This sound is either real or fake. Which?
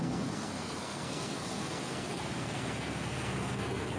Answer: fake